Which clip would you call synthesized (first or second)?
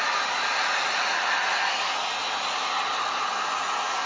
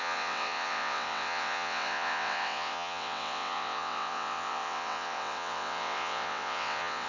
second